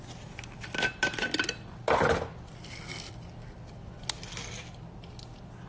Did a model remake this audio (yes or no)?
no